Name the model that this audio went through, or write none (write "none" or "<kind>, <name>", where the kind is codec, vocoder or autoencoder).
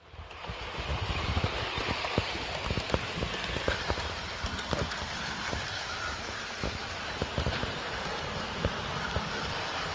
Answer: none